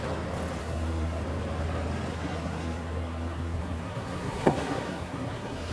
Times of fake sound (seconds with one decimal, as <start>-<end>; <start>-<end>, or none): 0.6-1.2; 2.1-5.7

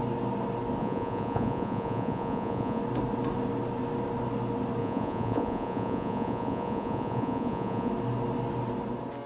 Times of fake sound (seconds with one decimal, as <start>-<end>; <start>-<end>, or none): 0.8-2.8; 4.8-7.9

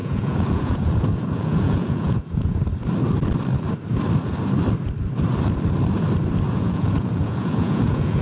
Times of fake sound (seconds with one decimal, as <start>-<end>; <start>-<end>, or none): 0.0-2.6; 6.5-8.2

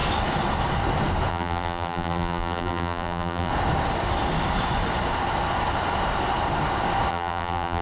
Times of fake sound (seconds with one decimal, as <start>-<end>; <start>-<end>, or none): 1.3-3.5; 7.1-7.8

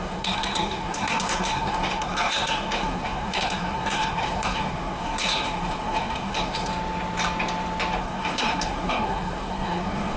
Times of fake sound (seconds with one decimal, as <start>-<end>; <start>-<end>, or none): 0.0-6.7; 8.0-10.2